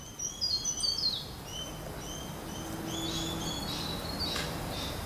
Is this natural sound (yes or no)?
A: yes